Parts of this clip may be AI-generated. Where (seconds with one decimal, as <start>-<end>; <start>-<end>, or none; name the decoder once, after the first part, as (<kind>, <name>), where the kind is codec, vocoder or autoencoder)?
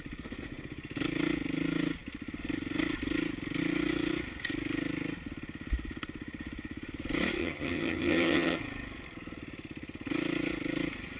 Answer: 7.4-8.6 (vocoder, HiFi-GAN)